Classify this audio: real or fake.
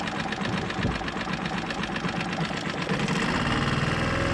real